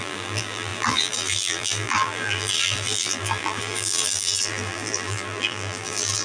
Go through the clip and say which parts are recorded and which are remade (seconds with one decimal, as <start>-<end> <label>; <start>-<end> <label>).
0.0-6.2 remade